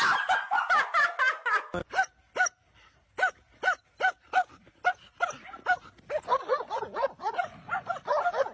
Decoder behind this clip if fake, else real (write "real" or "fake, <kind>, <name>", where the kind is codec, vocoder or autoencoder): real